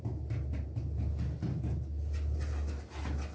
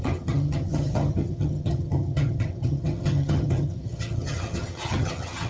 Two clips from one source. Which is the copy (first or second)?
second